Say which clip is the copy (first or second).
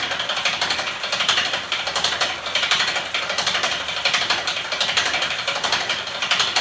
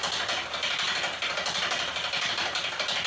first